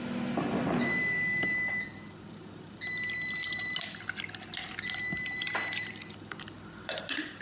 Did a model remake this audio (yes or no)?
yes